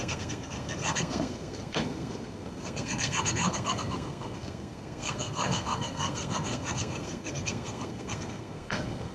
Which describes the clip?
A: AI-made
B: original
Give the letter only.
A